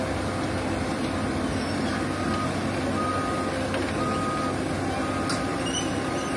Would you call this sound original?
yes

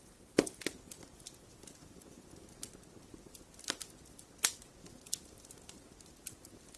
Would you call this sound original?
yes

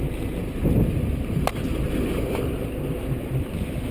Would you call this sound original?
yes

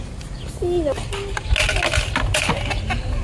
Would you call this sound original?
yes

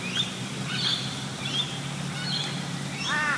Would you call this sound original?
yes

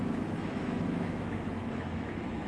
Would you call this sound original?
no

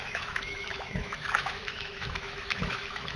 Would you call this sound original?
no